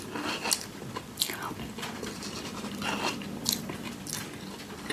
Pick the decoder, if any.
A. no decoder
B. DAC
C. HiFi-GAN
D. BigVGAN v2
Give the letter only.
A